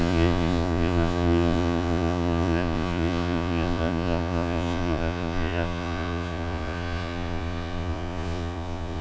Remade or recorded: remade